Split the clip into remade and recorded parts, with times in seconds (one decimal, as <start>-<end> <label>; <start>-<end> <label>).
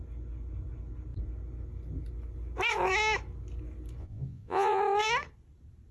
0.0-4.0 recorded; 4.0-4.8 remade; 4.8-5.9 recorded